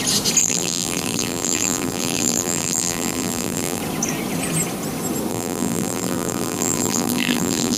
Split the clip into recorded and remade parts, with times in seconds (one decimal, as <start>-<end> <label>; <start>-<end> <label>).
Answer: 0.0-0.4 recorded; 0.4-3.8 remade; 3.8-5.3 recorded; 5.3-7.8 remade